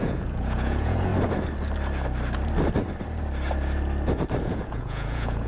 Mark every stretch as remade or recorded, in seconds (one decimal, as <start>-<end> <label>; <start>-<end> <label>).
0.0-1.1 remade; 1.1-4.4 recorded; 4.4-5.5 remade